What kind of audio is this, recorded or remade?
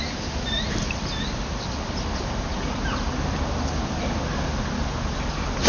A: recorded